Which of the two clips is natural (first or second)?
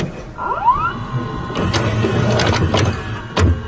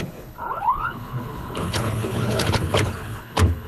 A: first